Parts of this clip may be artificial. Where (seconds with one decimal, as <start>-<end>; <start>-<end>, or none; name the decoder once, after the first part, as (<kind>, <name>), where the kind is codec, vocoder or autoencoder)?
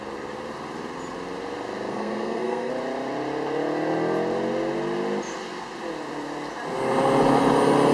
1.9-2.7 (codec, SNAC)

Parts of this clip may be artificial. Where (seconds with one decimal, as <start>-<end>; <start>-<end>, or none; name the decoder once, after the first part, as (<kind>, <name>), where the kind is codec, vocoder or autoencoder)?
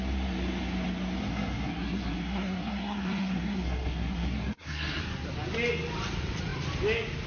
1.2-5.0 (codec, SNAC)